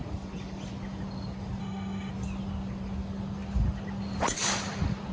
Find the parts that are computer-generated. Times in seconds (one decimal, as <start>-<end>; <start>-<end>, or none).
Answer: 1.6-2.1